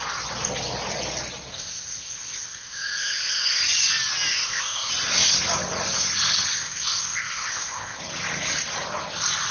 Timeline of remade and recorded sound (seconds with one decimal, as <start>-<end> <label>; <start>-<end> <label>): 0.0-1.5 recorded; 1.5-3.6 remade; 3.6-4.3 recorded; 4.3-4.9 remade; 4.9-6.5 recorded; 6.5-8.0 remade; 8.0-9.5 recorded